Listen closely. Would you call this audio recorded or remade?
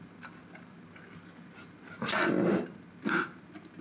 recorded